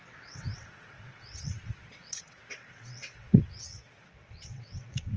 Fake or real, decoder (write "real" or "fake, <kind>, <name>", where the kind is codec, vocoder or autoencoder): fake, vocoder, WaveNeXt